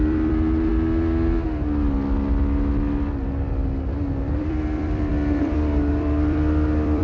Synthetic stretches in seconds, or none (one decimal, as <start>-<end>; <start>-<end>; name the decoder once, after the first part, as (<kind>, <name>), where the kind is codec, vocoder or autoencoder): 0.0-0.7 (vocoder, BigVGAN v2); 4.1-7.0

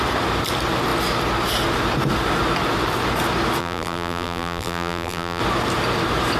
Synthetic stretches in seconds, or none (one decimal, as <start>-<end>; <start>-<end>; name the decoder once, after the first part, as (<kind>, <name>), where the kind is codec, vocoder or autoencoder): 3.6-5.4 (vocoder, BigVGAN v2)

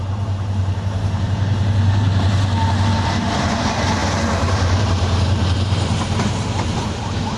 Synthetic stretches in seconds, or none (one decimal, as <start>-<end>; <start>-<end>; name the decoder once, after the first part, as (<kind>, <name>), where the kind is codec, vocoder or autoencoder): 0.0-7.4 (vocoder, BigVGAN v2)

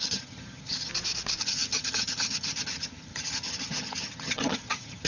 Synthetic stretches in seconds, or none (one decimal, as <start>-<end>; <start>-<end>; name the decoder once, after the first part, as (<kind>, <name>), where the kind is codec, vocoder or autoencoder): 0.0-0.9 (vocoder, HiFi-GAN); 1.4-5.1

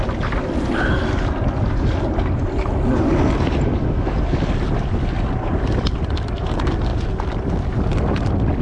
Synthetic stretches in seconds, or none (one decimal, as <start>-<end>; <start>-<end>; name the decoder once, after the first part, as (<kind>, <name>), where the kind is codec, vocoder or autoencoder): none

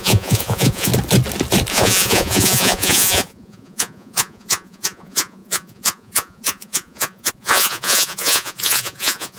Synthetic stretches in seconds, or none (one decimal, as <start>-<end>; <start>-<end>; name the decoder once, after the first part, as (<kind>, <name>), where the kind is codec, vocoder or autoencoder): 0.0-0.9 (vocoder, Vocos); 1.7-9.4